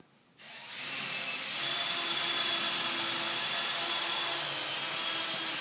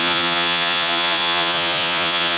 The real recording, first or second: first